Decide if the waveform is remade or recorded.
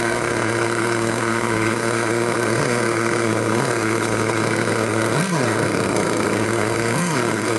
remade